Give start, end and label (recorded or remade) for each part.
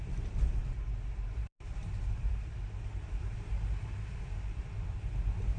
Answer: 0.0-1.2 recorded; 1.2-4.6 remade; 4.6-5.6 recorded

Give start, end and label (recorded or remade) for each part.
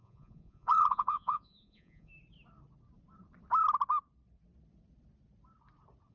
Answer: 0.0-2.1 remade; 2.1-6.1 recorded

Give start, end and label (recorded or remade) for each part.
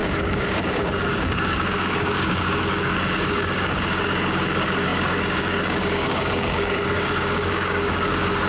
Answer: 0.0-8.5 remade